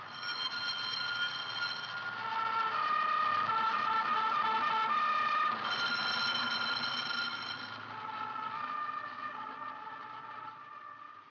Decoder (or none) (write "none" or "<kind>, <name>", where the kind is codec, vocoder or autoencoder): none